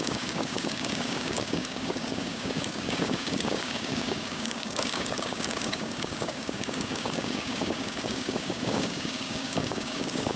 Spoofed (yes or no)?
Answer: yes